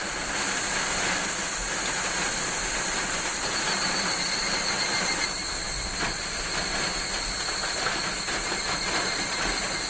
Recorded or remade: recorded